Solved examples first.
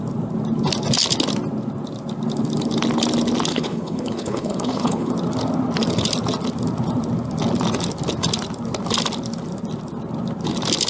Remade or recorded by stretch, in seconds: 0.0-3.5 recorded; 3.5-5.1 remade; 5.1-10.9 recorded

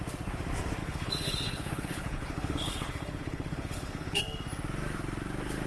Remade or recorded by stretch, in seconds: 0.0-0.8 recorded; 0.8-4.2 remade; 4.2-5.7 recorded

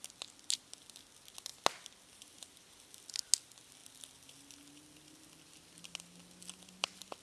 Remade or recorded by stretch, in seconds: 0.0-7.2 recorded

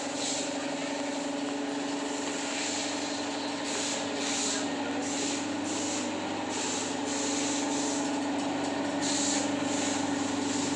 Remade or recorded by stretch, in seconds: 0.0-10.8 recorded

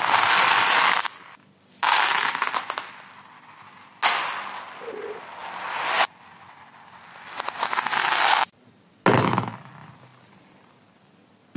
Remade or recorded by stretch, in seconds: 0.0-11.6 recorded

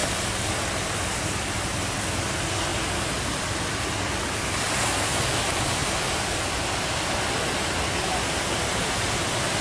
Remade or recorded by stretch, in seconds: 0.0-9.6 recorded